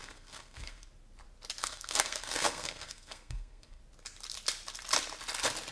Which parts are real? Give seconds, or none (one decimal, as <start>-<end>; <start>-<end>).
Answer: 0.9-1.6; 3.8-5.7